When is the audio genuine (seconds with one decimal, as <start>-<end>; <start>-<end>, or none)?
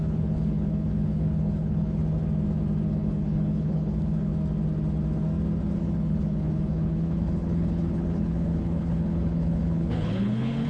2.0-2.9; 4.3-5.8